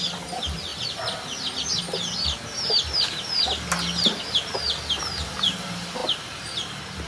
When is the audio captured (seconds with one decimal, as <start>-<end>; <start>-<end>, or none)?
0.0-7.1